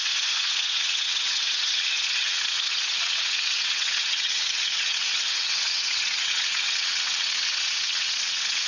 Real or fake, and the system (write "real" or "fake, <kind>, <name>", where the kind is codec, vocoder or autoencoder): fake, vocoder, WaveNeXt